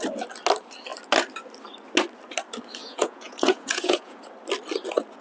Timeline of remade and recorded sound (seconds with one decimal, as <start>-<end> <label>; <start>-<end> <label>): 0.0-2.8 recorded; 2.8-4.2 remade; 4.2-5.2 recorded